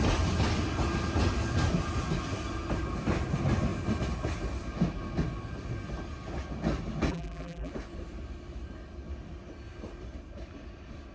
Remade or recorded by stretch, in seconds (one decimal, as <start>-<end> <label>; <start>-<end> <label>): 0.0-7.1 recorded; 7.1-7.7 remade; 7.7-11.1 recorded